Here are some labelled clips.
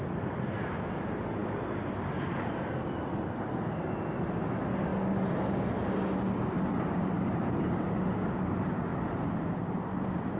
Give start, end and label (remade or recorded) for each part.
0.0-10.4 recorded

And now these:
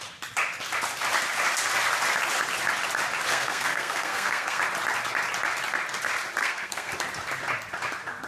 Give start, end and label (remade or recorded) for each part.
0.0-3.3 recorded; 3.3-4.6 remade; 4.6-6.4 recorded; 6.4-6.9 remade; 6.9-8.3 recorded

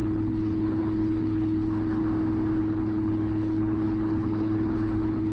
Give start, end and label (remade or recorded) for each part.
0.0-2.0 remade; 2.0-2.6 recorded; 2.6-5.3 remade

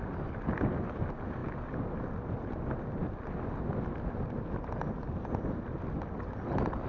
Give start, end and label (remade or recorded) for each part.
0.0-1.4 remade; 1.4-2.2 recorded; 2.2-3.0 remade; 3.0-5.4 recorded; 5.4-6.9 remade

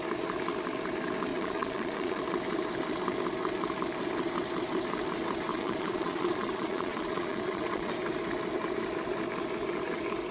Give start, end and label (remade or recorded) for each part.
0.0-1.3 recorded; 1.3-2.2 remade; 2.2-5.5 recorded; 5.5-7.9 remade; 7.9-10.3 recorded

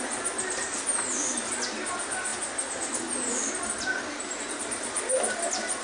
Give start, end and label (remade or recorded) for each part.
0.0-5.8 recorded

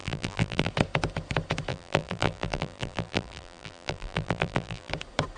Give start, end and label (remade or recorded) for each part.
0.0-0.7 remade; 0.7-1.7 recorded; 1.7-4.9 remade; 4.9-5.4 recorded